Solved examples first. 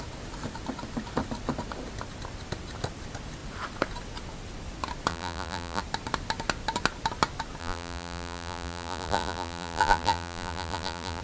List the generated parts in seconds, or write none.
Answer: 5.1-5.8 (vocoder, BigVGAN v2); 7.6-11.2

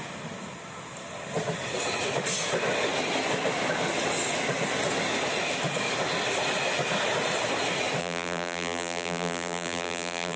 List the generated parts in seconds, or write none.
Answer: 8.0-10.4 (vocoder, BigVGAN v2)

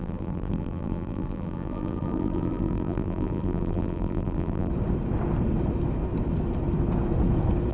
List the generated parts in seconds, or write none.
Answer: 0.0-4.7 (vocoder, BigVGAN v2)

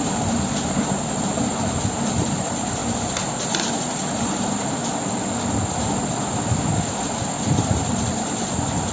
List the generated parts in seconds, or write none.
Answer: 0.0-2.8 (vocoder, BigVGAN v2); 3.8-4.8; 7.4-8.9

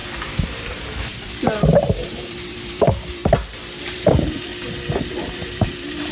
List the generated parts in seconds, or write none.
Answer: 0.0-3.2 (vocoder, BigVGAN v2); 3.8-4.5; 5.1-6.1